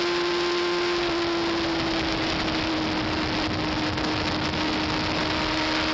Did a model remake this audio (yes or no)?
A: no